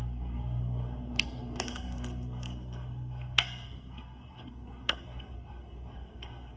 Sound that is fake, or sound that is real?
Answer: fake